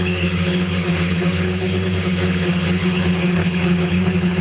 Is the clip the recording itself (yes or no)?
no